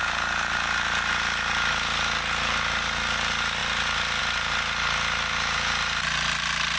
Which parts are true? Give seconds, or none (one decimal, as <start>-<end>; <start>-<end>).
0.0-6.8